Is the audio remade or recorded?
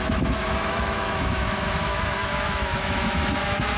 remade